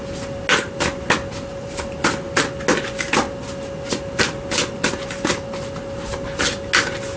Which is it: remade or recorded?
recorded